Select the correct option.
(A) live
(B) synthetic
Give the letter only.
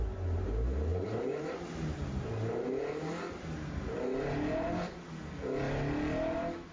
A